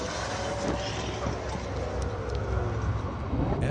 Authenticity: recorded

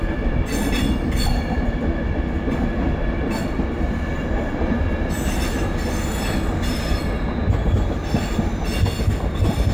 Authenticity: recorded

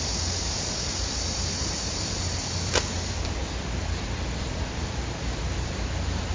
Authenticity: remade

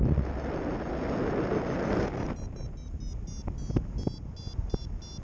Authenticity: recorded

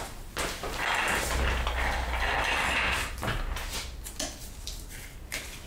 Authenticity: recorded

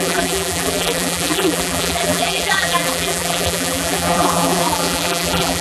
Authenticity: remade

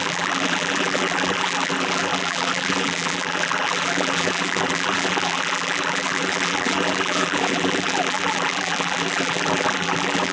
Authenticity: remade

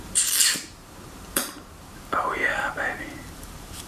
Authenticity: remade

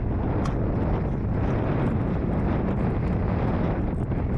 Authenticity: recorded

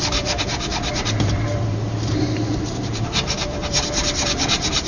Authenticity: remade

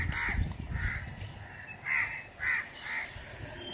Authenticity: recorded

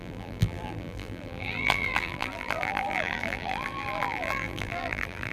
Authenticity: remade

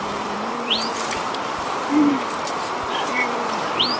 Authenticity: remade